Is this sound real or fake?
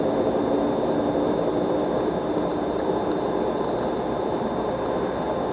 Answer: real